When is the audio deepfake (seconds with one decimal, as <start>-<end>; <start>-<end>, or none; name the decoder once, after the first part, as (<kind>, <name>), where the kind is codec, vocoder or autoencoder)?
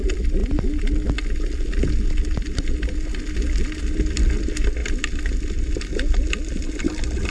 none